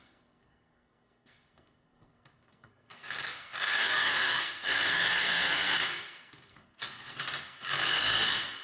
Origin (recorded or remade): remade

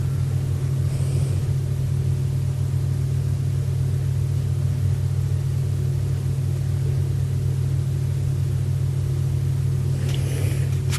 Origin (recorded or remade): recorded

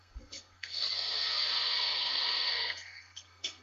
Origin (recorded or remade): remade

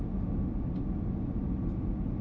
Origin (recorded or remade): recorded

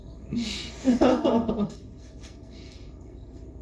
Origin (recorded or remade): remade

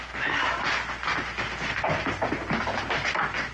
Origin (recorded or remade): recorded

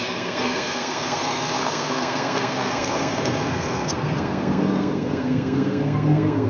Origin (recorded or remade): remade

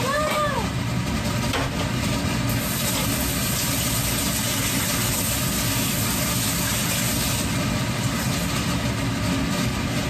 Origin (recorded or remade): recorded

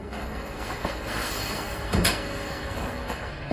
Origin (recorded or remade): remade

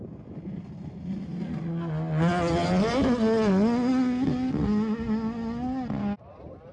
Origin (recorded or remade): recorded